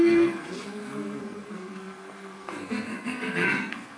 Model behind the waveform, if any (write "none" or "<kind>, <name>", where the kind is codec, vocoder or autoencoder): codec, SNAC